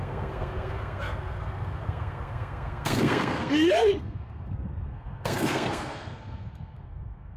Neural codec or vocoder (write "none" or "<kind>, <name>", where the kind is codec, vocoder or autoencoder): codec, SNAC